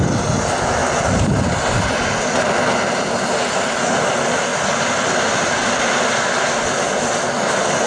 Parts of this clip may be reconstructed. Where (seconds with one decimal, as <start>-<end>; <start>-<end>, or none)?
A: 0.8-3.6; 4.5-5.7